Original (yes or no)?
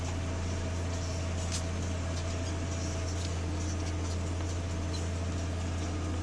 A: yes